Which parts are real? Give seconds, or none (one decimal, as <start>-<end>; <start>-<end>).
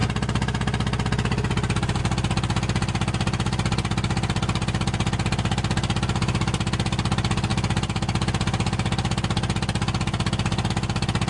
0.0-11.3